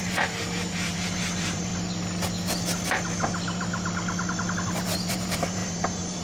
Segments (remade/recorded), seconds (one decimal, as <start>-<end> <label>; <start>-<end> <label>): 0.0-1.7 remade; 1.7-5.1 recorded; 5.1-6.2 remade